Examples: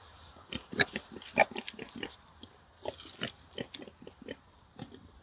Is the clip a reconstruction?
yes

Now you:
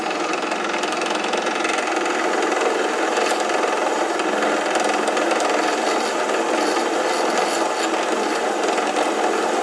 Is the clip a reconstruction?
no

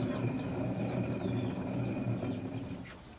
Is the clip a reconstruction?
no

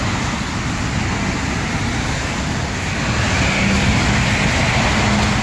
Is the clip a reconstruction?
no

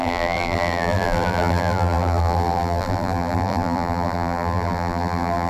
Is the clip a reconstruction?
yes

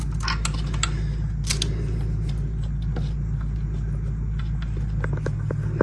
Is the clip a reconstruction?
no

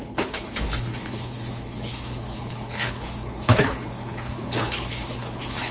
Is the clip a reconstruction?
yes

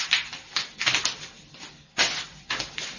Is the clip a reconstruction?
no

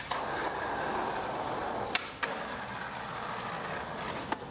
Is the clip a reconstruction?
no